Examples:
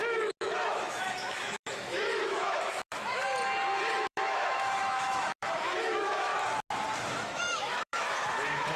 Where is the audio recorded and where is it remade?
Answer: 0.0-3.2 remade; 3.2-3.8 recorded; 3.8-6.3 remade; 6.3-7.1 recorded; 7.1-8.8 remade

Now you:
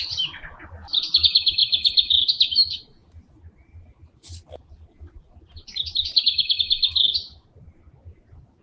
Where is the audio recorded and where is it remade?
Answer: 0.0-8.6 recorded

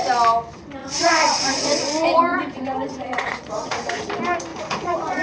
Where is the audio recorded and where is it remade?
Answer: 0.0-0.8 recorded; 0.8-1.6 remade; 1.6-2.3 recorded; 2.3-4.0 remade; 4.0-4.5 recorded; 4.5-5.2 remade

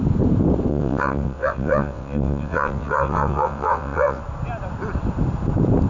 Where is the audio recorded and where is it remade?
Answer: 0.0-0.7 recorded; 0.7-4.2 remade; 4.2-5.9 recorded

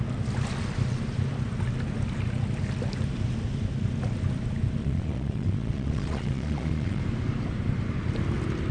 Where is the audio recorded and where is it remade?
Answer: 0.0-4.8 recorded; 4.8-7.0 remade; 7.0-8.7 recorded